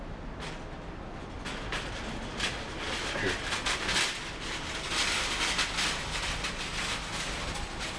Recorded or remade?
recorded